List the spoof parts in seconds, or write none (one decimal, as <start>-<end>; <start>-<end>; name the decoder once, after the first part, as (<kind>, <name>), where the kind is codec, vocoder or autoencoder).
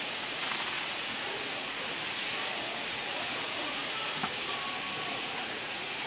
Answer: 0.0-3.8 (vocoder, Vocos); 5.1-6.1